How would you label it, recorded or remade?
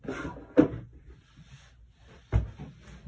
recorded